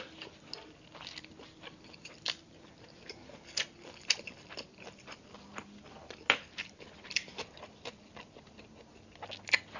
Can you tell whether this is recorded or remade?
recorded